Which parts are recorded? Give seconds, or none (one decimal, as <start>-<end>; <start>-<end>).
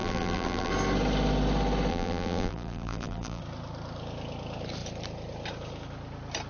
0.7-1.9; 3.4-6.5